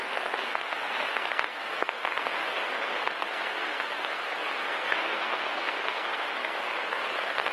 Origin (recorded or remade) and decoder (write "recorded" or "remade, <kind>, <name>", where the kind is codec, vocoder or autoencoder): remade, codec, SNAC